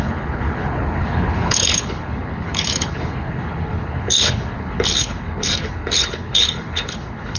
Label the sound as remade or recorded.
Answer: remade